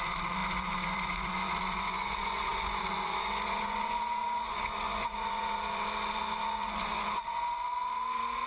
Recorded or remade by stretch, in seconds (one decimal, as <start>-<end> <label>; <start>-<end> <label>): 0.0-8.5 remade